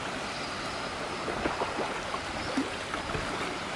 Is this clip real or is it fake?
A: real